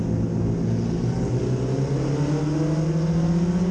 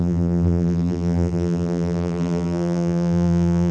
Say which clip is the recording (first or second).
first